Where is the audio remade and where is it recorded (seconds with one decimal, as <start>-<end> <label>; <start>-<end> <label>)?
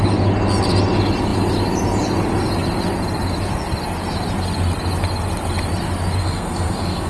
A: 0.0-6.2 recorded; 6.2-7.1 remade